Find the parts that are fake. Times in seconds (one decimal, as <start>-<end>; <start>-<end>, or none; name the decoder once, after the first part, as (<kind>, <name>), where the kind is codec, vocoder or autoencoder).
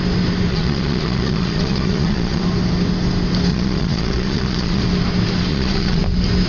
0.5-2.4 (vocoder, Vocos); 3.5-4.8; 5.5-6.0